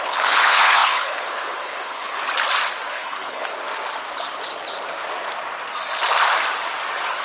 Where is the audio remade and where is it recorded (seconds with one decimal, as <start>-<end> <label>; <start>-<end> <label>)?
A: 0.0-2.2 remade; 2.2-2.9 recorded; 2.9-3.5 remade; 3.5-7.2 recorded